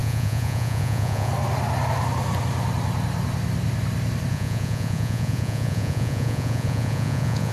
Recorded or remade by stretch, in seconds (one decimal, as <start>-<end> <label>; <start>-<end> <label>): 0.0-1.3 remade; 1.3-4.3 recorded; 4.3-7.5 remade